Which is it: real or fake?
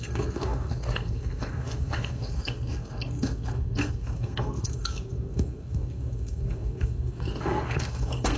fake